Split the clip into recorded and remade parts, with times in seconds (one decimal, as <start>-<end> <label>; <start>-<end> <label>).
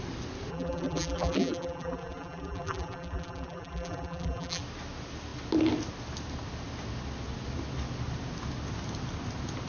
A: 0.0-0.5 recorded; 0.5-4.6 remade; 4.6-9.7 recorded